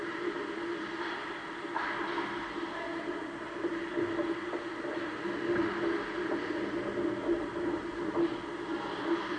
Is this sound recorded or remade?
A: recorded